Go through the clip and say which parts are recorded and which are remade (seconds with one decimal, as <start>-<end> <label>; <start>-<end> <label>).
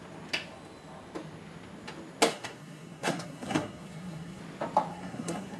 0.0-2.3 recorded; 2.3-4.4 remade; 4.4-4.9 recorded; 4.9-5.6 remade